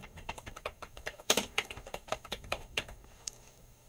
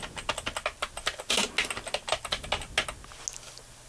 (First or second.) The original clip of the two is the second